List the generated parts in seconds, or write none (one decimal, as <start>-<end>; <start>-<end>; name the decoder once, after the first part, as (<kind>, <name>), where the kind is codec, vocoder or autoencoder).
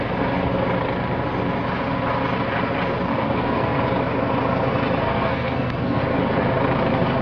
3.1-3.8 (codec, SNAC); 5.0-6.0